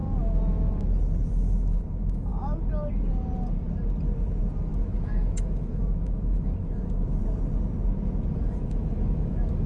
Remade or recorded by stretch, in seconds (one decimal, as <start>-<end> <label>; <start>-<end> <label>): 0.0-1.3 recorded; 1.3-2.3 remade; 2.3-4.7 recorded; 4.7-7.2 remade; 7.2-8.5 recorded; 8.5-9.7 remade

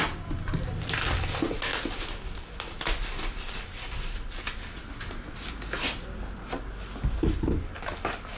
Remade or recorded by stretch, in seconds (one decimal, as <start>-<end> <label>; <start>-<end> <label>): 0.0-8.4 recorded

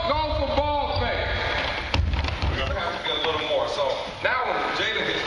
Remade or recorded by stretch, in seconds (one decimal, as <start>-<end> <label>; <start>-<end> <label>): 0.0-1.7 recorded; 1.7-5.3 remade

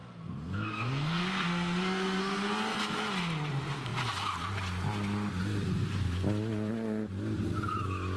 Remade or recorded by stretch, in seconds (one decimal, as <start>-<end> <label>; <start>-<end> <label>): 0.0-2.5 remade; 2.5-8.2 recorded

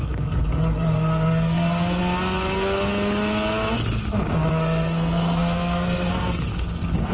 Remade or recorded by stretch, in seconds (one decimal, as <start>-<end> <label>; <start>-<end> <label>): 0.0-2.0 remade; 2.0-4.5 recorded; 4.5-7.1 remade

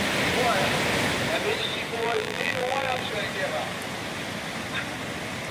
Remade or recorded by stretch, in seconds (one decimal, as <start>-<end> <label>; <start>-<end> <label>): 0.0-2.0 recorded; 2.0-3.0 remade; 3.0-5.5 recorded

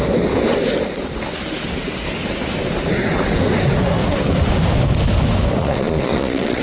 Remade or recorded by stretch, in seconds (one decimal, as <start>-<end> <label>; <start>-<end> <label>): 0.0-5.6 recorded; 5.6-6.6 remade

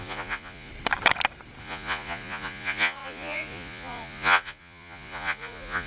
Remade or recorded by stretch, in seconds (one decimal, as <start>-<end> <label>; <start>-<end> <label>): 0.0-0.7 remade; 0.7-1.6 recorded; 1.6-5.9 remade